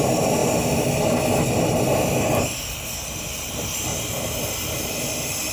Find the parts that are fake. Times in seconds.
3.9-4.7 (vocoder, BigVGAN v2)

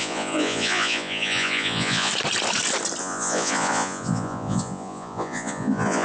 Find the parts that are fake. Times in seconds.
0.0-2.1 (vocoder, Vocos); 3.0-6.0

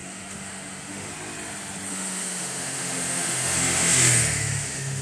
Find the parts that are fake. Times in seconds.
0.0-1.1 (autoencoder, DAC-VAE); 1.9-5.0

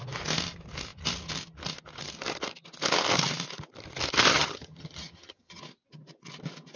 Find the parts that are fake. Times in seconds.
4.3-5.6 (vocoder, HiFi-GAN)

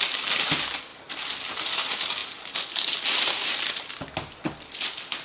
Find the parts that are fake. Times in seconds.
none

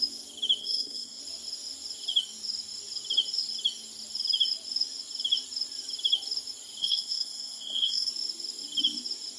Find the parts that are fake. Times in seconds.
0.6-1.2 (codec, SNAC); 6.8-8.1